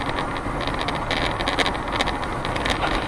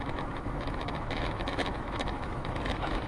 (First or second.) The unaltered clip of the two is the first